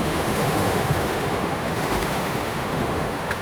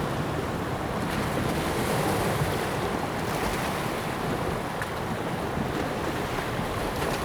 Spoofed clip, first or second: first